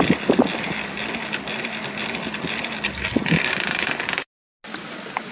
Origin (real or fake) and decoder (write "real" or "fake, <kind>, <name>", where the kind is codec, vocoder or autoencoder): real